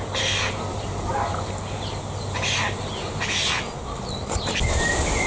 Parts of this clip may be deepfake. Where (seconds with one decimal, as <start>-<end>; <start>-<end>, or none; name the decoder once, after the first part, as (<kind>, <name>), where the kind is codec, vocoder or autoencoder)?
none